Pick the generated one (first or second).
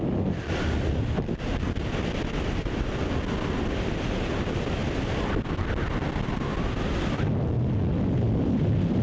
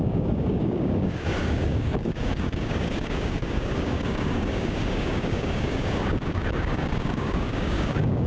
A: second